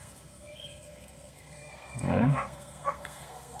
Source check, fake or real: fake